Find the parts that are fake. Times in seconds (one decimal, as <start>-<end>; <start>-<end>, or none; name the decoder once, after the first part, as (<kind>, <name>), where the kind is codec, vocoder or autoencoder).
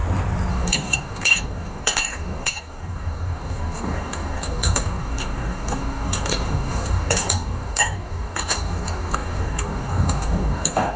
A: 0.5-11.0 (codec, DAC)